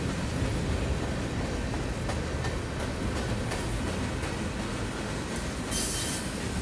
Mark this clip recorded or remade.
recorded